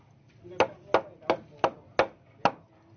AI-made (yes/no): no